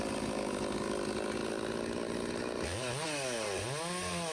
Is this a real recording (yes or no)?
yes